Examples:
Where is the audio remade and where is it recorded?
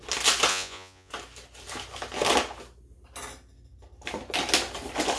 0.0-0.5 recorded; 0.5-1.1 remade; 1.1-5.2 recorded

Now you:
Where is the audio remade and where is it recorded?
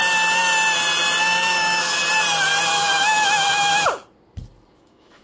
0.0-1.2 recorded; 1.2-2.0 remade; 2.0-2.7 recorded; 2.7-3.7 remade; 3.7-4.7 recorded; 4.7-5.2 remade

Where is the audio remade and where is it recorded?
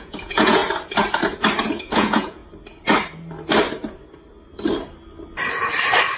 0.0-0.6 remade; 0.6-1.8 recorded; 1.8-2.4 remade; 2.4-6.2 recorded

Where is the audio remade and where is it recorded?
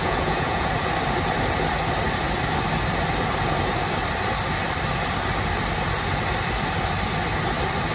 0.0-0.7 remade; 0.7-7.9 recorded